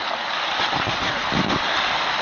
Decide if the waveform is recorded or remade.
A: recorded